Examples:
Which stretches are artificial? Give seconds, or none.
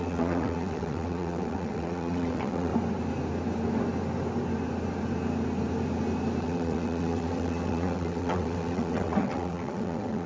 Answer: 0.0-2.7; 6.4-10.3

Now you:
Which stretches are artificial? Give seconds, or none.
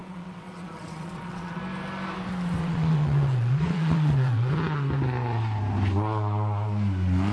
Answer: 0.0-1.6; 2.6-4.5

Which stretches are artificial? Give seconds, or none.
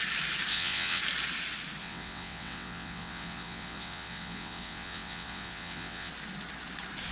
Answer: 0.5-1.0; 1.8-6.1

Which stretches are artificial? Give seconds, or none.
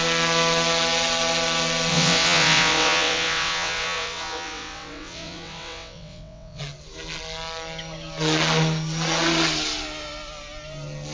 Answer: 1.9-6.6